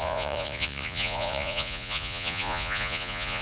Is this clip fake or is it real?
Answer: fake